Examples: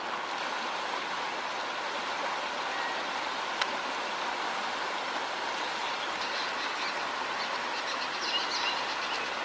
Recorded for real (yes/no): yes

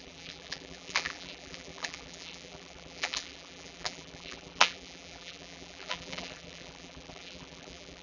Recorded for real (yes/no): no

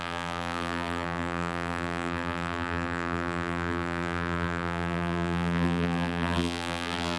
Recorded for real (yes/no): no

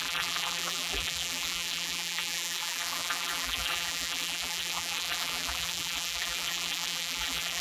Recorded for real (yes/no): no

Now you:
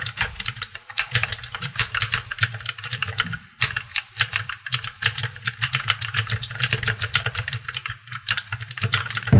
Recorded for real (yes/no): no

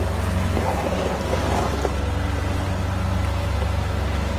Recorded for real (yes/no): yes